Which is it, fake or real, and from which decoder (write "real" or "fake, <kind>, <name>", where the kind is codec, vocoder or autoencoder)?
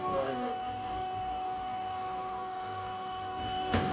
fake, codec, DAC